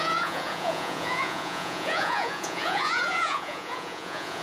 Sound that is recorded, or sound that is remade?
remade